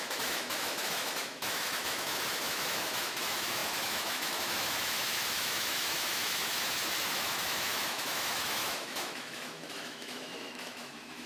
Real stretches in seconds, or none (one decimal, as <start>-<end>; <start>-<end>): none